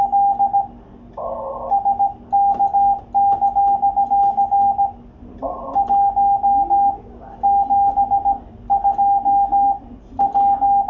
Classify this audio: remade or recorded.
recorded